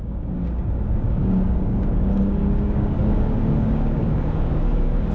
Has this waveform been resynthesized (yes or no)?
yes